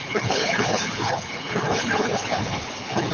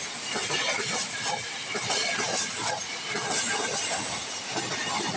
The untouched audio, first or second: second